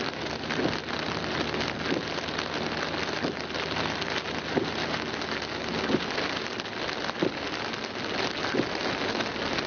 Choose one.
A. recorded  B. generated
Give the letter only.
A